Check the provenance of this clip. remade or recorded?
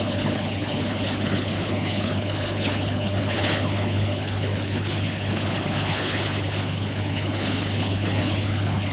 remade